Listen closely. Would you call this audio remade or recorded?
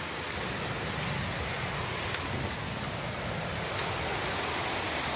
recorded